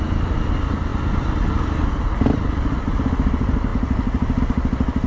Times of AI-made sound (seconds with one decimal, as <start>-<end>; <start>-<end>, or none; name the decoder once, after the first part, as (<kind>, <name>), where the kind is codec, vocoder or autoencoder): none